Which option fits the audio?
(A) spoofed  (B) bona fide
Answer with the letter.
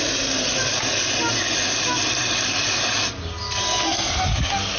B